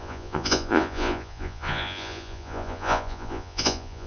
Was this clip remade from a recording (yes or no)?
yes